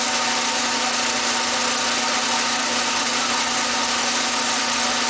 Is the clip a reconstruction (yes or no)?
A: no